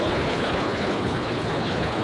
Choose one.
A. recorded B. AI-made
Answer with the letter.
B